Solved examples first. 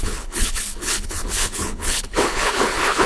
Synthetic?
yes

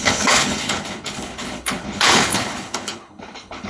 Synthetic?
yes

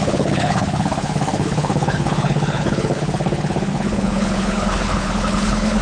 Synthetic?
yes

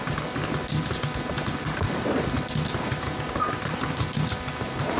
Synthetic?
no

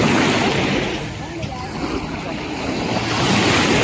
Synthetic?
no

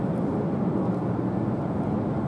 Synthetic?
no